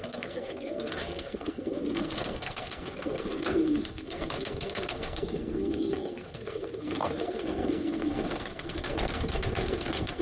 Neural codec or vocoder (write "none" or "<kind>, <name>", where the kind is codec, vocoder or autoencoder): codec, SNAC